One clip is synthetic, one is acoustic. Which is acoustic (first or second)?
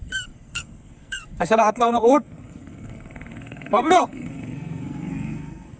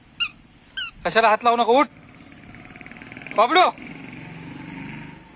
second